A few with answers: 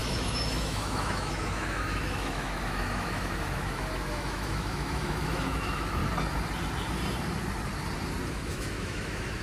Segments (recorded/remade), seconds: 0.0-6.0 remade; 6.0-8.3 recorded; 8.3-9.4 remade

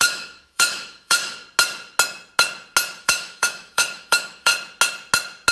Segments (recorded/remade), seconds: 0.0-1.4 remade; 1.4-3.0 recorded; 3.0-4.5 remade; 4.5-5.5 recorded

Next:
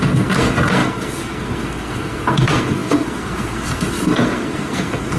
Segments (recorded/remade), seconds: 0.0-5.2 remade

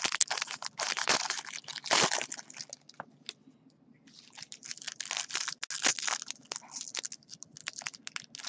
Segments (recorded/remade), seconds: 0.0-8.5 recorded

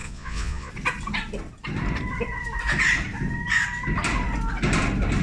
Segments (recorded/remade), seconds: 0.0-0.7 remade; 0.7-5.2 recorded